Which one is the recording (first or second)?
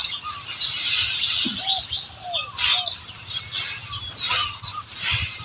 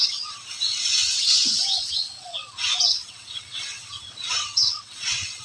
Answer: first